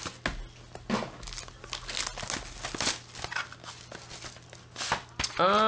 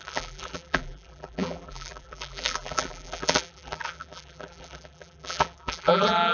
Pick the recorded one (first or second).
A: first